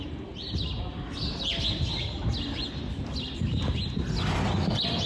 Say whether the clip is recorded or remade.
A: recorded